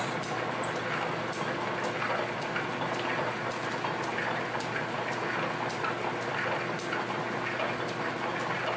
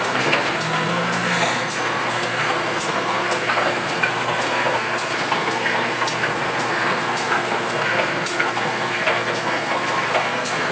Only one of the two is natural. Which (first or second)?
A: first